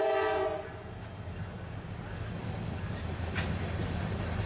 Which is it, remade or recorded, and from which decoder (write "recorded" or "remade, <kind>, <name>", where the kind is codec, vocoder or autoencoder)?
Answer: recorded